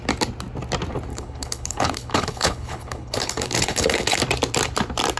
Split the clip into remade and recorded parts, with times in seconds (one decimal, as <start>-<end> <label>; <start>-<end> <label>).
0.0-1.1 recorded; 1.1-4.2 remade; 4.2-5.2 recorded